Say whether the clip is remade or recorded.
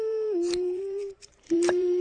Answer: remade